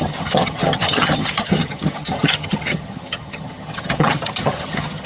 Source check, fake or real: fake